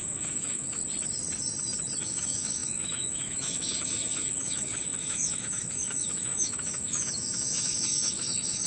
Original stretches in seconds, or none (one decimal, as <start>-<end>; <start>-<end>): 0.8-2.0